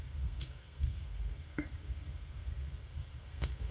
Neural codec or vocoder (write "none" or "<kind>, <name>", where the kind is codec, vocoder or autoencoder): codec, SNAC